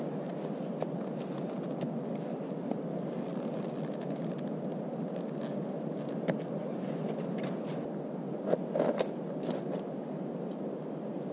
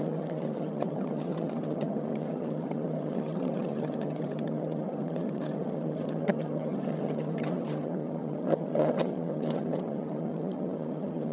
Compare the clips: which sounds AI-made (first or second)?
second